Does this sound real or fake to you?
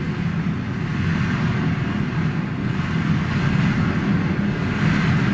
real